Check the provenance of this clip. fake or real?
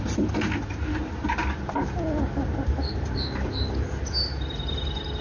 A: real